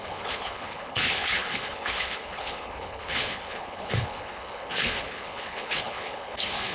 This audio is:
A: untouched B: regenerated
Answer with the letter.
B